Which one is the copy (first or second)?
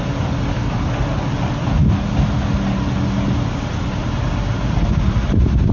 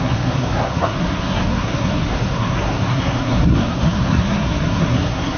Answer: second